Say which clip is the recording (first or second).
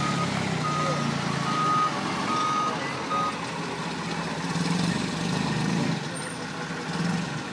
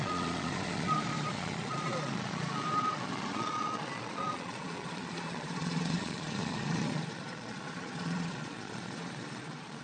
first